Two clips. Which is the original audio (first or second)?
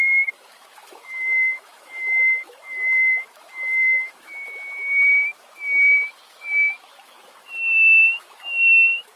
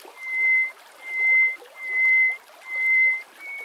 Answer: second